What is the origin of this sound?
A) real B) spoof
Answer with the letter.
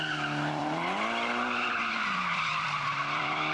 B